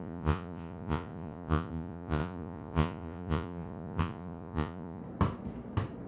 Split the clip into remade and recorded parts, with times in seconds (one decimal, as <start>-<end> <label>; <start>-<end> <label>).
0.0-5.0 remade; 5.0-6.1 recorded